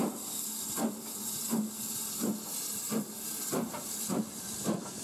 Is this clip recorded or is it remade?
recorded